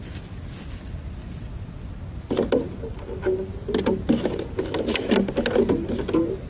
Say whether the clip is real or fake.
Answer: real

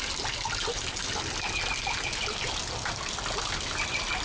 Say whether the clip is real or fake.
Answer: real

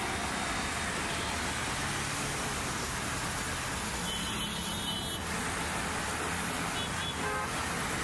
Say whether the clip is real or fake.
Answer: real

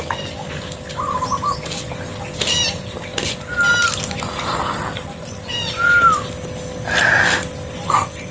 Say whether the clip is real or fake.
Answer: real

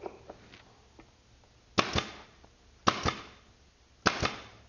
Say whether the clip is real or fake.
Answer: real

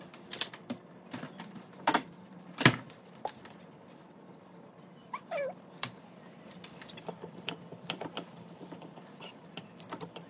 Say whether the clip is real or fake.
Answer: fake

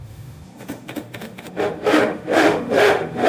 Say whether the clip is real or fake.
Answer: fake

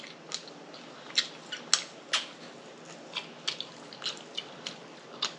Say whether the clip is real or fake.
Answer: real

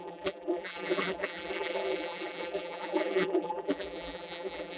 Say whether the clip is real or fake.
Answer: fake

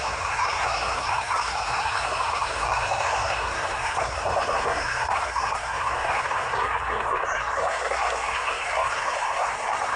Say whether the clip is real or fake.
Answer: fake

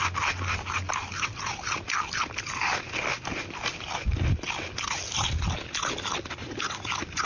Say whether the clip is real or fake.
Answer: real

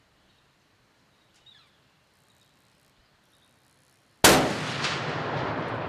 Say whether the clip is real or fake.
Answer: real